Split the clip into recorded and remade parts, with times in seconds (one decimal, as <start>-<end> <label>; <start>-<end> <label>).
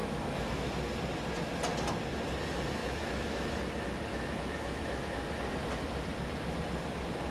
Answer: 0.0-0.7 remade; 0.7-2.8 recorded; 2.8-3.6 remade; 3.6-4.1 recorded; 4.1-5.1 remade; 5.1-7.3 recorded